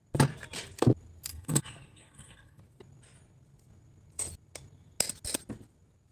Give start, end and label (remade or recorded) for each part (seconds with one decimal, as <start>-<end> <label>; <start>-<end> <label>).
0.0-1.3 recorded; 1.3-2.6 remade; 2.6-6.1 recorded